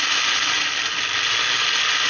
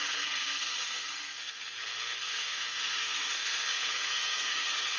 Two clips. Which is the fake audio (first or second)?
second